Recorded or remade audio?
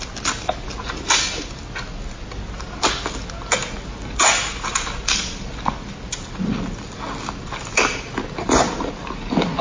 recorded